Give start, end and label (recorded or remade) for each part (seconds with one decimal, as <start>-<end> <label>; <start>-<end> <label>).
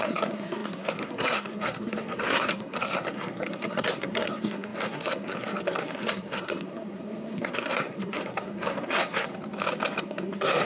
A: 0.0-9.3 remade; 9.3-10.0 recorded; 10.0-10.6 remade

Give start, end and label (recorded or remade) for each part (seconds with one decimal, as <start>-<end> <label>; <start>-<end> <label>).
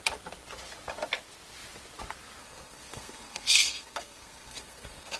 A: 0.0-2.4 recorded; 2.4-5.2 remade